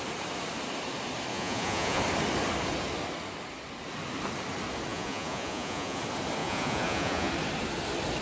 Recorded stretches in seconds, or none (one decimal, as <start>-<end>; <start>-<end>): 0.0-1.3; 2.0-4.9; 6.0-6.4; 7.3-8.2